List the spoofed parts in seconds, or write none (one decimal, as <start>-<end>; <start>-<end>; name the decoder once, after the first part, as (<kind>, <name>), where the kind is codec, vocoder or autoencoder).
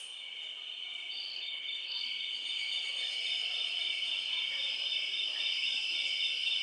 1.3-2.0 (codec, HILCodec)